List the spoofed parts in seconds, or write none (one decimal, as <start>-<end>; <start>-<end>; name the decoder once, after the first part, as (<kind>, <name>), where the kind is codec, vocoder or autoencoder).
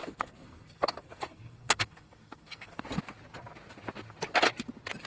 0.0-2.8 (codec, SNAC)